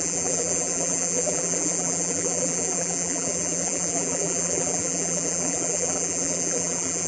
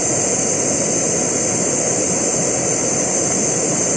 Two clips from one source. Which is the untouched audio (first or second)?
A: second